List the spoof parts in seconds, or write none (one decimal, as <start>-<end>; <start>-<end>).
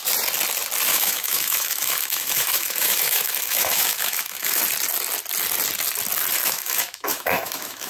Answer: 0.9-4.6; 6.4-7.9